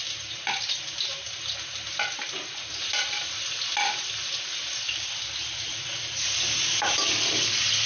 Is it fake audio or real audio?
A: real